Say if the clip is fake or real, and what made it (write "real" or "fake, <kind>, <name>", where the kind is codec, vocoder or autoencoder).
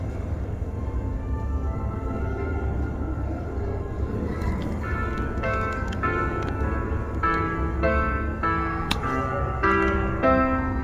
fake, codec, DAC